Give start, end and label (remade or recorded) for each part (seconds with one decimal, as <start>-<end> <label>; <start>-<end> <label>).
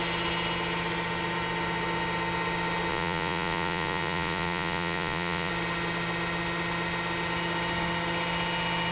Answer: 0.0-2.9 recorded; 2.9-5.5 remade; 5.5-8.9 recorded